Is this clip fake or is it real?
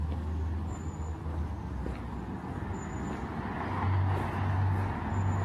real